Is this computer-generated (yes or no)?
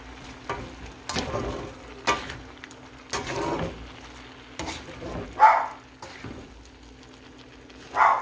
no